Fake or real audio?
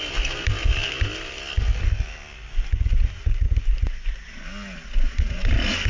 real